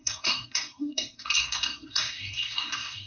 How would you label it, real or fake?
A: fake